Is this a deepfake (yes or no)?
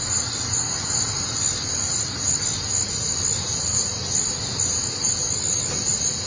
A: no